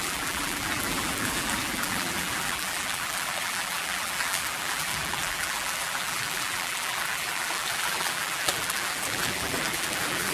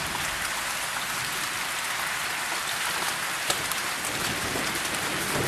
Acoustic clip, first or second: second